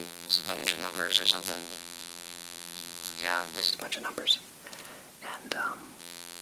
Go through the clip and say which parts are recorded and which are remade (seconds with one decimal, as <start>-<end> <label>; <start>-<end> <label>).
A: 0.0-3.7 remade; 3.7-6.0 recorded; 6.0-6.4 remade